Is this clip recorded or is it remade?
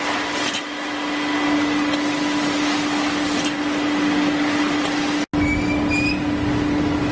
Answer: recorded